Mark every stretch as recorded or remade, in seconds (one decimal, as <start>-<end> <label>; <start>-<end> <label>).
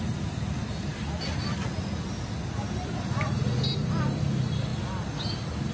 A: 0.0-5.7 recorded